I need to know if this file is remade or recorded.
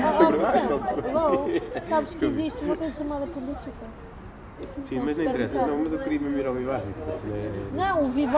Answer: recorded